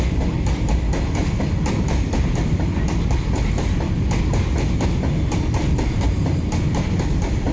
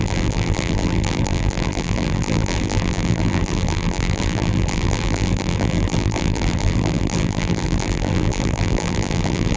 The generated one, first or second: second